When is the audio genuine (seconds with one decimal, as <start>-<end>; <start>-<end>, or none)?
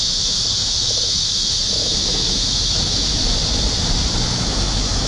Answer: 3.2-4.3